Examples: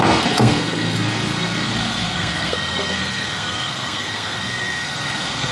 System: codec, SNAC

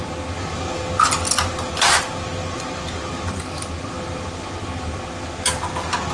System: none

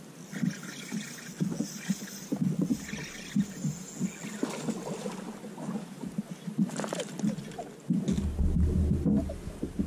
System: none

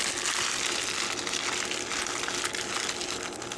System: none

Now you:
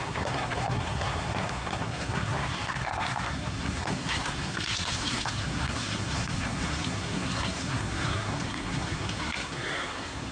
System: codec, SNAC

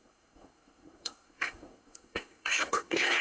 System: codec, SNAC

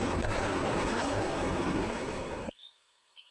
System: codec, SNAC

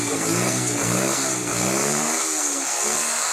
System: codec, SNAC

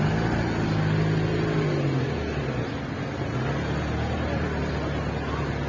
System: none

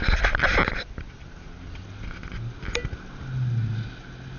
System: none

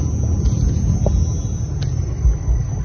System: none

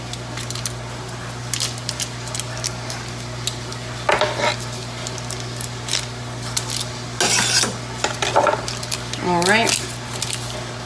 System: none